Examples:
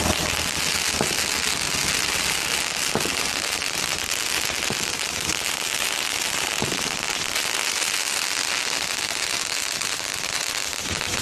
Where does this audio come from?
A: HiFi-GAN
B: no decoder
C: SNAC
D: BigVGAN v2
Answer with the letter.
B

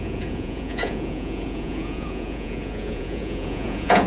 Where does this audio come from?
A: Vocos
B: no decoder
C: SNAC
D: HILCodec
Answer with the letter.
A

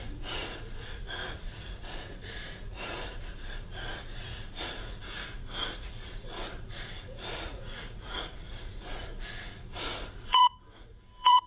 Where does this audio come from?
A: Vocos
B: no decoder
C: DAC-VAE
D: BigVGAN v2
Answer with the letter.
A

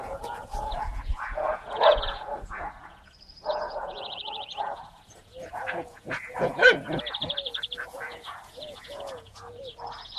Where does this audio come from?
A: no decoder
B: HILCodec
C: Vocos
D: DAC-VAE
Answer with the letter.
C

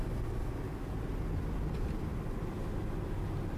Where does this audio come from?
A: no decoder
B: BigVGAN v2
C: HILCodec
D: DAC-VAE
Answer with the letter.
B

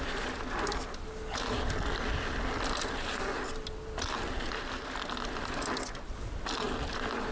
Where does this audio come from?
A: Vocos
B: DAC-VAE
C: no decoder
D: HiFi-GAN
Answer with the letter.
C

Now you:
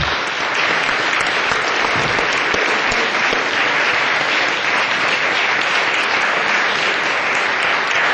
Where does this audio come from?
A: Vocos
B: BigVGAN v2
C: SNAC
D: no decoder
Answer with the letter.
D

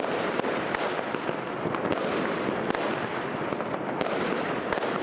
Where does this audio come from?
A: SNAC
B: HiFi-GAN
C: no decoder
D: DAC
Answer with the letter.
C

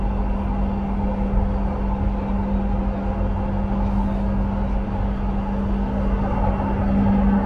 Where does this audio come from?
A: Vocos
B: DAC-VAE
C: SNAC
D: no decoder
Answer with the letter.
D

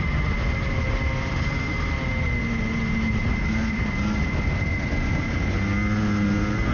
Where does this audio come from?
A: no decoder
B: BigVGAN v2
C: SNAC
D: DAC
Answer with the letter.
A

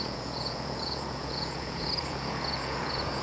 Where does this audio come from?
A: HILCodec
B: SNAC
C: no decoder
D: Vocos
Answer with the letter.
D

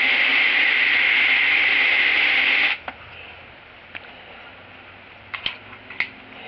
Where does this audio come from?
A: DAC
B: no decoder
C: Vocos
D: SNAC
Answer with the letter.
B